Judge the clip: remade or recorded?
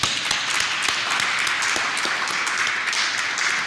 recorded